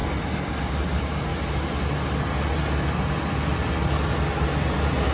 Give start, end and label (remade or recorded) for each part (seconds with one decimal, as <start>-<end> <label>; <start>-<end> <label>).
0.0-5.1 recorded